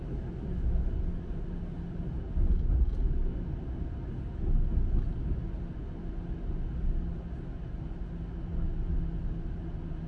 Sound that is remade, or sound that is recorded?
recorded